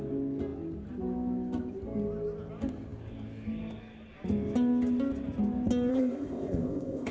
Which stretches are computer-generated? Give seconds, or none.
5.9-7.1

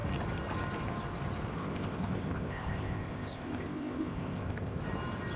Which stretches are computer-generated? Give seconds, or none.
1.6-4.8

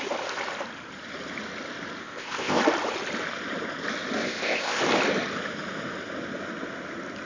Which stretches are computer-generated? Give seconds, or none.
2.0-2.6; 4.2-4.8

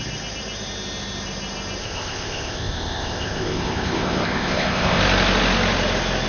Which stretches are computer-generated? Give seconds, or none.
1.8-5.0